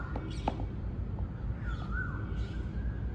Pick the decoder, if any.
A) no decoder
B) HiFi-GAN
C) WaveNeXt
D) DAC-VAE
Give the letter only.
A